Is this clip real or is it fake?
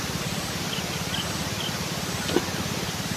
real